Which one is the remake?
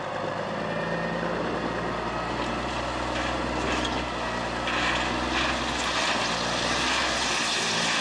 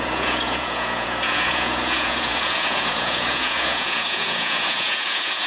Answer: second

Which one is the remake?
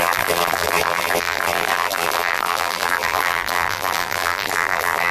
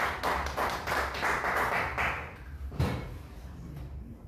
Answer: first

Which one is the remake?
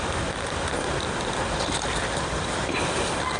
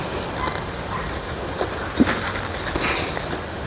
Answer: first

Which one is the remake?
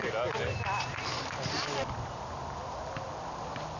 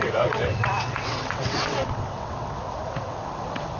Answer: second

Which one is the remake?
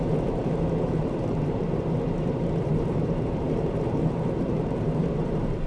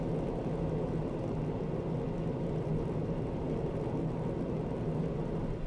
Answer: first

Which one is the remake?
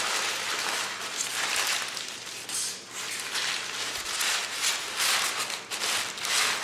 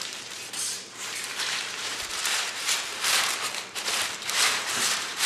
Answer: second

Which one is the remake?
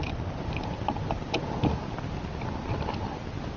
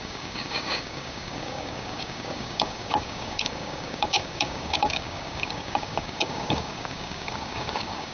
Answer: second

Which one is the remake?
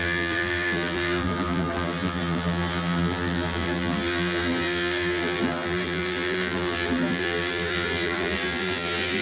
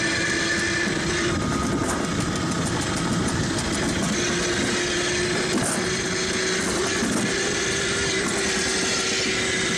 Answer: first